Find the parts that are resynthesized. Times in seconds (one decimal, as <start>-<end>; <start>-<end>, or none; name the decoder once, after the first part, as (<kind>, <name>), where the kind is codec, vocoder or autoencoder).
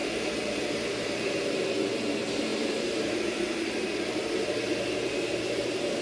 0.0-1.6 (vocoder, BigVGAN v2); 2.5-6.0